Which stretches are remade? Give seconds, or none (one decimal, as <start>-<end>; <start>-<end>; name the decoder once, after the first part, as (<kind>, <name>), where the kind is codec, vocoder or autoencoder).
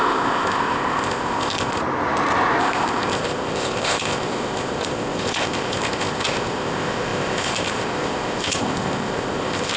0.0-1.8 (codec, ZipCodec); 2.6-9.8